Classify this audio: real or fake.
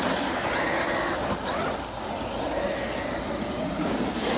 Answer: real